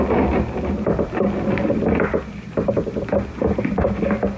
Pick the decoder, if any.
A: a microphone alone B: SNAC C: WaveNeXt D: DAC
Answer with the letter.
A